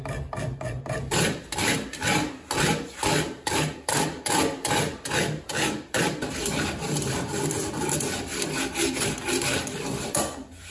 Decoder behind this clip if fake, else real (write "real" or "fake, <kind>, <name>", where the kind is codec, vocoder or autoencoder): real